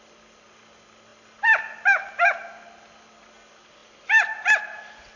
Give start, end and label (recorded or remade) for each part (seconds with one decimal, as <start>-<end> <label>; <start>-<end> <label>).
0.0-5.2 recorded